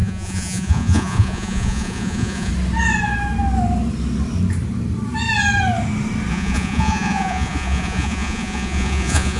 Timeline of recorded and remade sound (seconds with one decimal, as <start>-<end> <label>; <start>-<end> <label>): 0.0-2.5 remade; 2.5-6.3 recorded; 6.3-9.4 remade

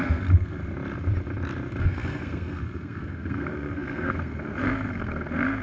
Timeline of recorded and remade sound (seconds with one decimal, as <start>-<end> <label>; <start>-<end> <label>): 0.0-0.6 remade; 0.6-1.8 recorded; 1.8-5.6 remade

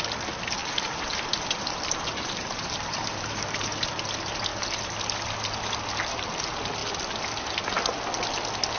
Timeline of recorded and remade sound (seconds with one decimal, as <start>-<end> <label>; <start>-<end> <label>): 0.0-0.6 recorded; 0.6-3.9 remade; 3.9-8.8 recorded

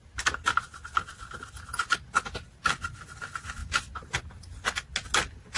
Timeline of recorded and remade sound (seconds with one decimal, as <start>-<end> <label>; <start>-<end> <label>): 0.0-5.6 recorded